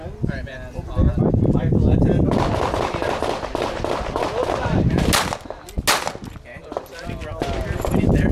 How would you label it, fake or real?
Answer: real